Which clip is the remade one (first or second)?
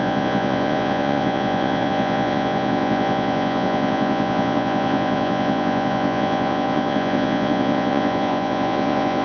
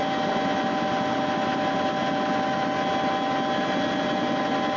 first